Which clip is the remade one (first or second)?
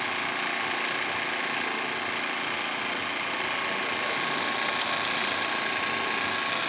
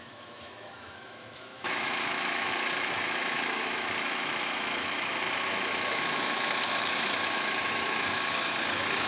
second